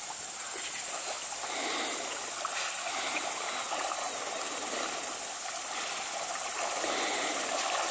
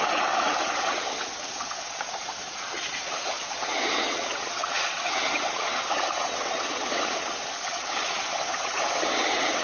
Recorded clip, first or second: first